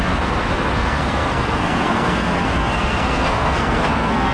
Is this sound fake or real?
fake